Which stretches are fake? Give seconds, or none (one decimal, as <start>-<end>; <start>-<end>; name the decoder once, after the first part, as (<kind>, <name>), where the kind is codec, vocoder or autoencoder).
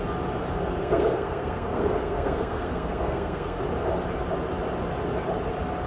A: 0.8-3.6 (codec, SNAC)